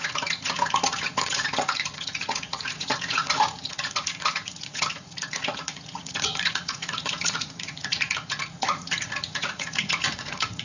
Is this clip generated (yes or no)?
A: yes